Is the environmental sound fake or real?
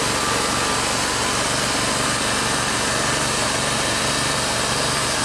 real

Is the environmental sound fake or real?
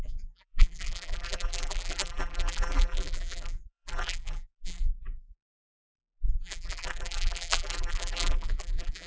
fake